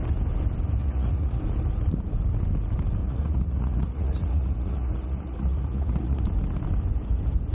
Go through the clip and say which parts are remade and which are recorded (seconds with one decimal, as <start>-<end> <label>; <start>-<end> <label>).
0.0-0.8 recorded; 0.8-1.4 remade; 1.4-3.0 recorded; 3.0-6.2 remade; 6.2-7.5 recorded